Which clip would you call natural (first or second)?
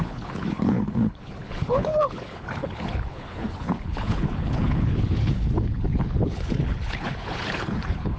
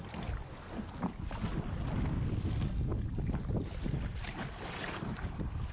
second